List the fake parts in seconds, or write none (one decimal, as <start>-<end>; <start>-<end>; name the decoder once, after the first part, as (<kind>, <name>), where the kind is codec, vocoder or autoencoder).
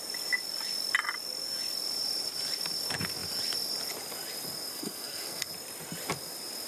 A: 4.7-5.5 (codec, SNAC)